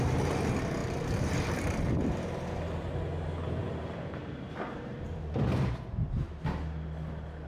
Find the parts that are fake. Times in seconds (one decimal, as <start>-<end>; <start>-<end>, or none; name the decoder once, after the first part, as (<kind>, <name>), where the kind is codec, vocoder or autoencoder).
0.8-2.9 (vocoder, BigVGAN v2); 3.6-5.9